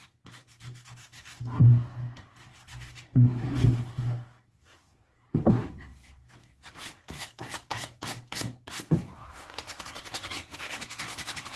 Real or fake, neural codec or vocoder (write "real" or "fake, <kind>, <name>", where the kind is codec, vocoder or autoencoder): fake, codec, SNAC